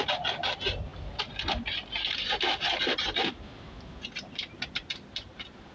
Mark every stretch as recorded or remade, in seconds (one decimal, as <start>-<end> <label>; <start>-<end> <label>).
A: 0.0-5.7 recorded